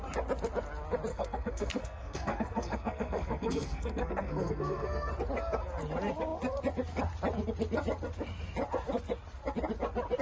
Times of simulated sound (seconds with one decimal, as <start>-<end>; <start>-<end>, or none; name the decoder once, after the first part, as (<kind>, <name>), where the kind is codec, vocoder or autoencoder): 1.1-5.1 (codec, SNAC)